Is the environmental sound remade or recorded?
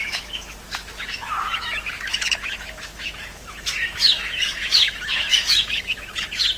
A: remade